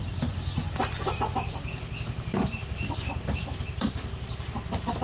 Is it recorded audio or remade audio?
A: recorded